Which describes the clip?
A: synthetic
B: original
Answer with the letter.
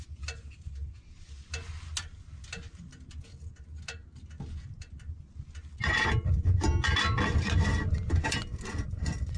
B